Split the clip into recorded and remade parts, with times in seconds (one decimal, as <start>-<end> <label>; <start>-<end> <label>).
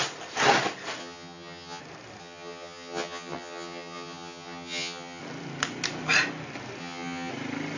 0.0-1.0 recorded; 1.0-1.8 remade; 1.8-2.2 recorded; 2.2-5.2 remade; 5.2-6.8 recorded; 6.8-7.3 remade; 7.3-7.8 recorded